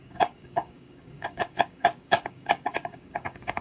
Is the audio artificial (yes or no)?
yes